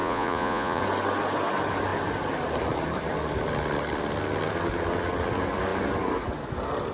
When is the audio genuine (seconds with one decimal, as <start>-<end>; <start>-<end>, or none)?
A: 0.8-6.9